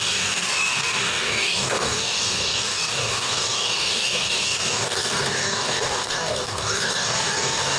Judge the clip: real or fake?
fake